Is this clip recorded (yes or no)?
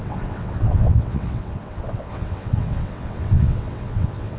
no